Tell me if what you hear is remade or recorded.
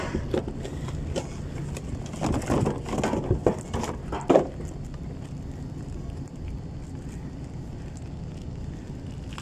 recorded